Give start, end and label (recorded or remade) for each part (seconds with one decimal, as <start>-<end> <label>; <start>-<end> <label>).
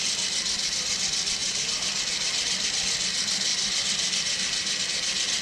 0.0-1.4 recorded; 1.4-2.0 remade; 2.0-3.5 recorded; 3.5-4.8 remade; 4.8-5.4 recorded